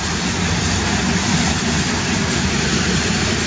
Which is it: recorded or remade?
recorded